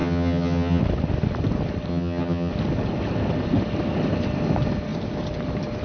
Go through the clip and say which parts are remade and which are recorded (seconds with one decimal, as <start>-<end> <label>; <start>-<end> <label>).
0.0-0.8 remade; 0.8-1.9 recorded; 1.9-2.5 remade; 2.5-5.8 recorded